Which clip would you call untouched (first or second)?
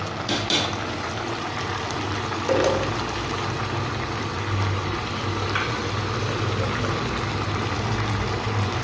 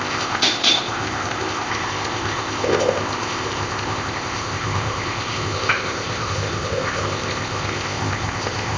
first